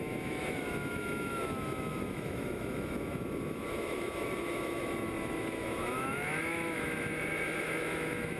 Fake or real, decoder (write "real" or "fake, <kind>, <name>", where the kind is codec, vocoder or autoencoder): fake, autoencoder, DAC-VAE